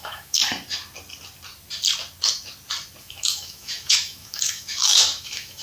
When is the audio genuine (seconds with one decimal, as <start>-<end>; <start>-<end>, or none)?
0.4-3.0